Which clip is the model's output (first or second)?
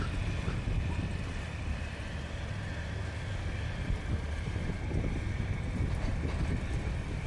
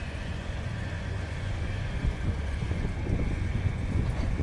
second